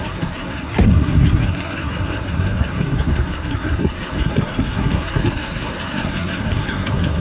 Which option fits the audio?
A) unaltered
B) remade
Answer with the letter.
B